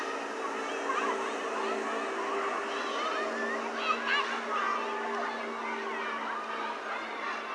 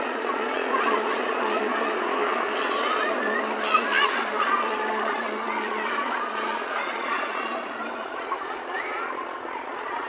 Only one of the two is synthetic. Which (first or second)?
second